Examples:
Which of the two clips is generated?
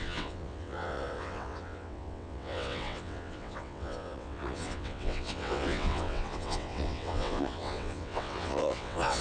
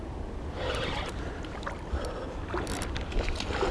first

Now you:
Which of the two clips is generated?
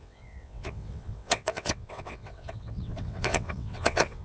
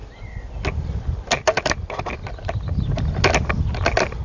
first